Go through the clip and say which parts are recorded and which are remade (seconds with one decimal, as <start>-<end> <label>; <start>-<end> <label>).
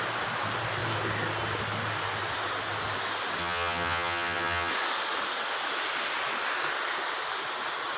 0.0-3.4 recorded; 3.4-4.7 remade; 4.7-8.0 recorded